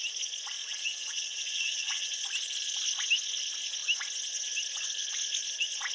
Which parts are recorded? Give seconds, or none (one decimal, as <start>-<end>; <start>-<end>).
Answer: 0.0-0.6; 2.2-5.9